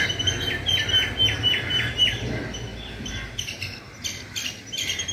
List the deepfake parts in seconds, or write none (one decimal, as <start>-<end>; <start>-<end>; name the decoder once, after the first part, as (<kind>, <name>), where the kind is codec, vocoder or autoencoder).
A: none